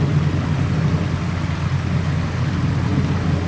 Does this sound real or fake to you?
real